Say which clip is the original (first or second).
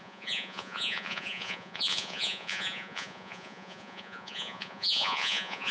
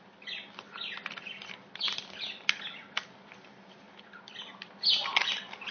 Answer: second